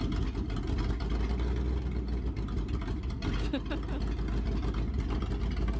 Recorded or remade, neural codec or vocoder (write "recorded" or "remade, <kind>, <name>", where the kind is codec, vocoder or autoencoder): recorded